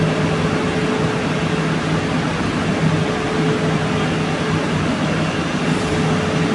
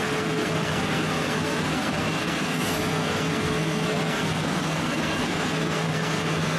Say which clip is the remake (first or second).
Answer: second